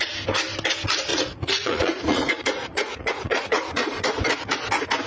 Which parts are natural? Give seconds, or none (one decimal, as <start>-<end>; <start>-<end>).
0.0-1.1; 4.2-5.1